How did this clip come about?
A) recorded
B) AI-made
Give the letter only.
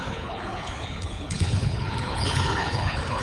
B